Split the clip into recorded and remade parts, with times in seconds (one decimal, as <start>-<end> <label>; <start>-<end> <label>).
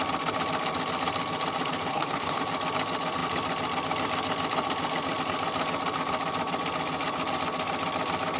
0.0-1.9 recorded; 1.9-2.4 remade; 2.4-8.4 recorded